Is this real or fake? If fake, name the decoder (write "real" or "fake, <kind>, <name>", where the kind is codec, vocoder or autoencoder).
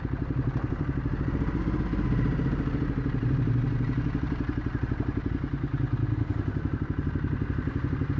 real